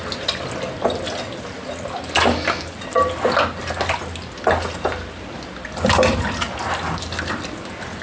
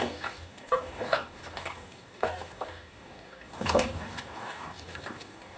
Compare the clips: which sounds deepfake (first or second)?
second